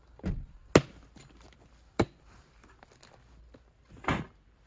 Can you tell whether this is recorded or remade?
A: recorded